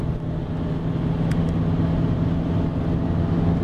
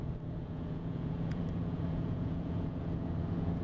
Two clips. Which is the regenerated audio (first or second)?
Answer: second